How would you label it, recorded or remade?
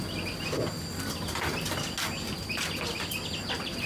recorded